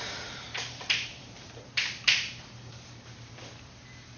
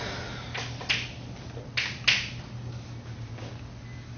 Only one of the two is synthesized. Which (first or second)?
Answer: first